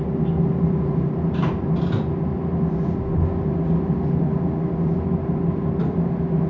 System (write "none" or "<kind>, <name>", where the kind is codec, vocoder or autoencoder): none